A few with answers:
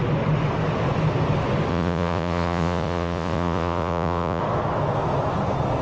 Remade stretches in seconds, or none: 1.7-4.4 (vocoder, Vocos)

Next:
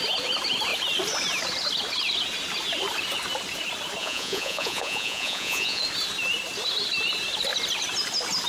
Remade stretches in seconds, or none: 4.0-5.8 (vocoder, Vocos)

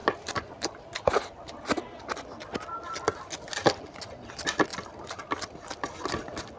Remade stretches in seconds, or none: none

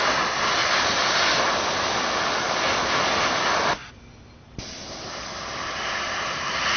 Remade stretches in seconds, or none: none

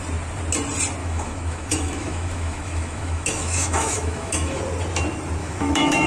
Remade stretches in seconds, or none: 1.0-4.6 (autoencoder, DAC-VAE); 5.4-6.1

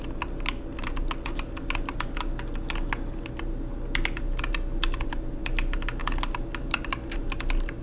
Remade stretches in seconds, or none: none

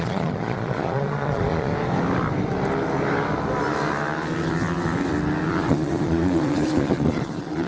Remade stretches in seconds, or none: 0.0-1.7 (vocoder, Vocos); 5.5-7.7

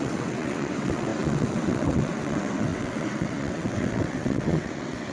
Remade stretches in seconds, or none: 0.0-5.1 (vocoder, WaveNeXt)